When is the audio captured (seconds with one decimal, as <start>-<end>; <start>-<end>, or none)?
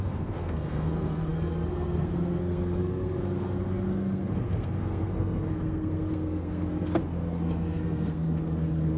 none